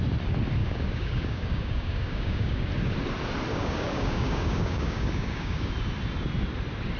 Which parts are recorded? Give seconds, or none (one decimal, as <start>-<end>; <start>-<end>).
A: 0.0-0.6; 2.7-3.5; 5.7-7.0